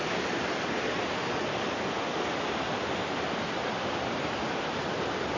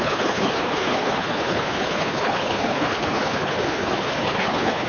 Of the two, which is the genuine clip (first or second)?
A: first